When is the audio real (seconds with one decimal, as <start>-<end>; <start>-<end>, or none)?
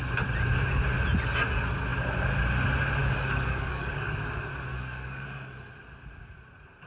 0.0-3.0; 4.2-4.7; 5.7-6.9